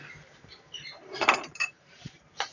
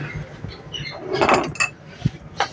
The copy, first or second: first